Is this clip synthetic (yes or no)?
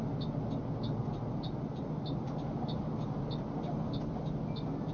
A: no